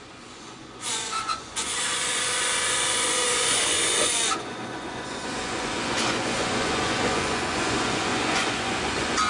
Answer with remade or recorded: remade